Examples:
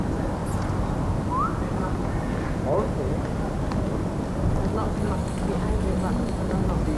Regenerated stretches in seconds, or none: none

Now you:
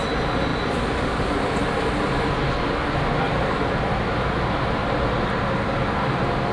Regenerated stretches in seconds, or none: none

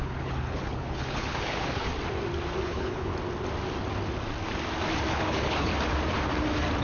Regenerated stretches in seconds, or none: 0.0-1.9 (codec, HILCodec); 2.6-3.1; 5.1-5.7

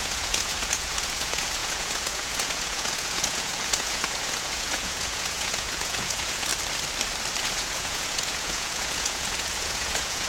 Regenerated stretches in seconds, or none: 0.0-6.5 (vocoder, Vocos); 7.4-10.3

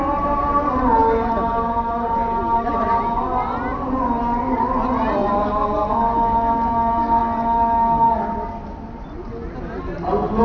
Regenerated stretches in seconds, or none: none

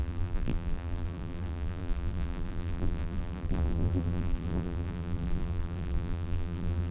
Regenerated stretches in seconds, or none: 0.0-6.9 (vocoder, BigVGAN v2)